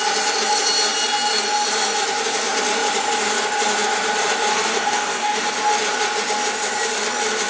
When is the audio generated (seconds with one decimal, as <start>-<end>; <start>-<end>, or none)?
4.5-5.5